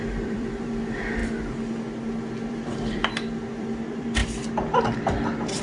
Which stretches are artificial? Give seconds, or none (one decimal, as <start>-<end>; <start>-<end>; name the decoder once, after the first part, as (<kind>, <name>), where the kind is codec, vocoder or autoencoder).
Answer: 0.0-1.2 (vocoder, BigVGAN v2); 2.5-3.0; 3.5-4.2; 4.8-5.6

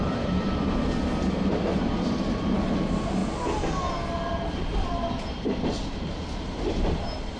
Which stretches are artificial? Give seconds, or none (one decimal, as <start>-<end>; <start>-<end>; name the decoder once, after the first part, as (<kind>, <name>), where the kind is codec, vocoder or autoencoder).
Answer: 0.0-1.0 (vocoder, BigVGAN v2); 1.5-3.2; 4.6-7.4

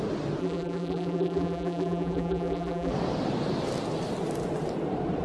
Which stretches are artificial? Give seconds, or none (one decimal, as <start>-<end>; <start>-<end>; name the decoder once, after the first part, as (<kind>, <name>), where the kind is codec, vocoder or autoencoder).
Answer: 0.4-2.9 (vocoder, BigVGAN v2)

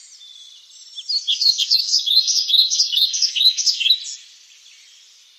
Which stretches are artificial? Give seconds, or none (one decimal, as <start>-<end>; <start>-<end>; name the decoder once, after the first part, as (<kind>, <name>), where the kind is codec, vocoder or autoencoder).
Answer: 1.3-3.9 (codec, SNAC)

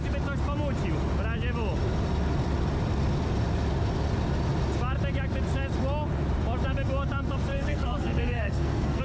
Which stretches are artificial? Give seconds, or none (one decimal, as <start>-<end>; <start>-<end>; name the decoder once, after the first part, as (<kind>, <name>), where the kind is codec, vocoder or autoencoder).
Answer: 7.5-9.0 (codec, SNAC)

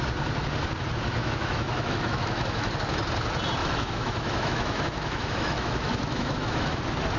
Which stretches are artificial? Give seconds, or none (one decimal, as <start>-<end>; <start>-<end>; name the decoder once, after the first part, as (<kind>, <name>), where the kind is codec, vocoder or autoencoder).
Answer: 1.2-2.7 (autoencoder, DAC-VAE); 3.6-6.8